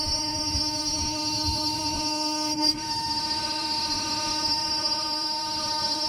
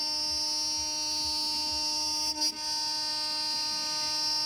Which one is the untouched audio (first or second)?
second